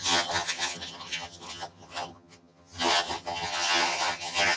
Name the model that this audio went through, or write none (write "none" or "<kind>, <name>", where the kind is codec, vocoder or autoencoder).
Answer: vocoder, HiFi-GAN